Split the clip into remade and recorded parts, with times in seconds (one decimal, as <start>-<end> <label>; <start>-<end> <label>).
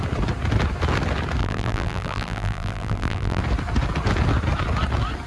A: 0.0-1.4 recorded; 1.4-3.4 remade; 3.4-5.3 recorded